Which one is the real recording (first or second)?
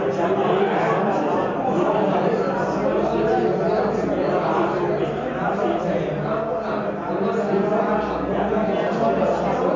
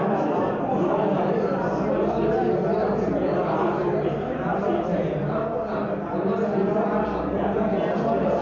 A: first